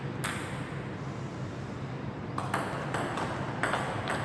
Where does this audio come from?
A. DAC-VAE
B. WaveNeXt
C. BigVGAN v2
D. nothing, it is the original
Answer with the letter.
D